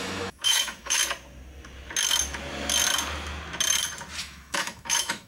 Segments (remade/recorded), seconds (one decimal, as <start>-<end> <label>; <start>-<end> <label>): 0.0-1.0 remade; 1.0-4.2 recorded; 4.2-5.3 remade